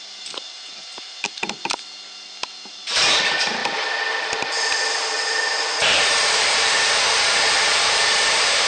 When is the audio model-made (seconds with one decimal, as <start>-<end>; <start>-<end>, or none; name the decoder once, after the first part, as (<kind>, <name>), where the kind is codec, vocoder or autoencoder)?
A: 0.0-1.4 (vocoder, BigVGAN v2); 2.7-8.7